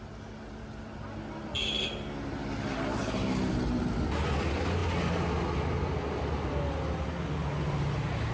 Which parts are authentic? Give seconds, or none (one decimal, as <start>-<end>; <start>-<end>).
0.0-8.3